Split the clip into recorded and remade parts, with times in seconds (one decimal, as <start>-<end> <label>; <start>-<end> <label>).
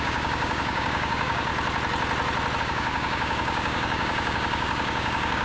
0.0-1.5 remade; 1.5-2.6 recorded; 2.6-5.4 remade